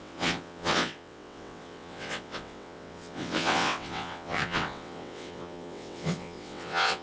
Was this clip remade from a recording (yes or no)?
yes